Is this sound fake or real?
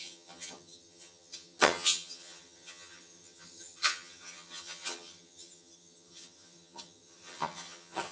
fake